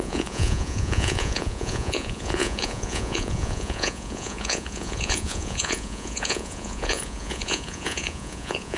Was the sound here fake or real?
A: fake